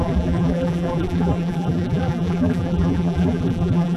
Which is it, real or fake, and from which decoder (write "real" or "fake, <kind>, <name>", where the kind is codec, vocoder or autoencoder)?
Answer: fake, vocoder, BigVGAN v2